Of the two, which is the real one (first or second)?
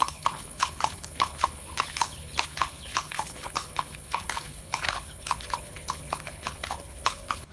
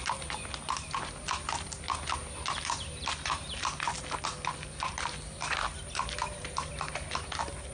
second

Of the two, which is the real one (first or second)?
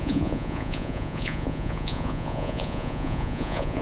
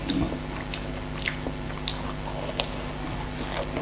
second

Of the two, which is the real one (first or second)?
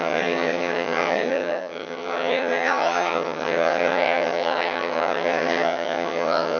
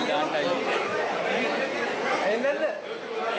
second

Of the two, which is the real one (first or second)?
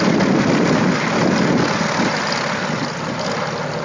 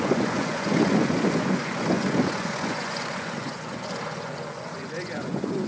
first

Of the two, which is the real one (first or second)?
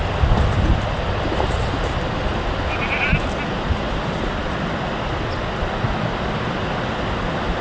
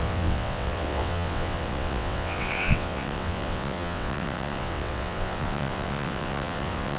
first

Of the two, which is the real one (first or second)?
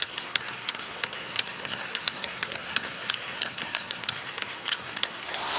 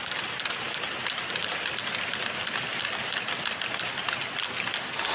second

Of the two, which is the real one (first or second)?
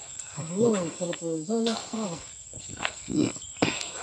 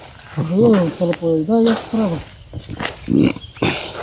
second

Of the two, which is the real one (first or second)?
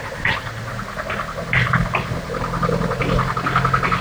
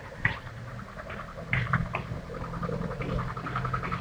first